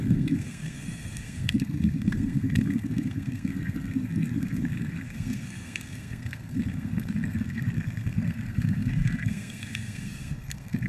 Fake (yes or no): yes